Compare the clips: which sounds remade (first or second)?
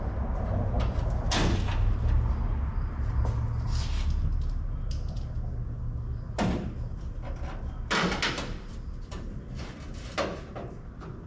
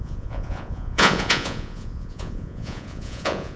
second